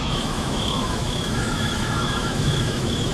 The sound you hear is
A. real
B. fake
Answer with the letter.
B